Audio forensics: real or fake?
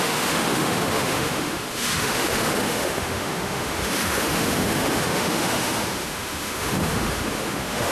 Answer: fake